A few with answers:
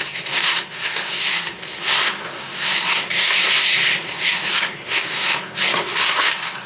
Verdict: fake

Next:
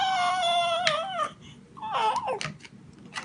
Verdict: real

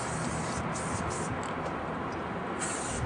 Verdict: real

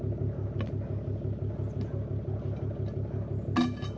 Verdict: real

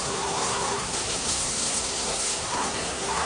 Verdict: fake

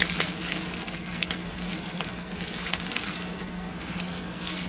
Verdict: fake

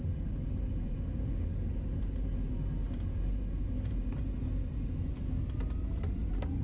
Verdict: real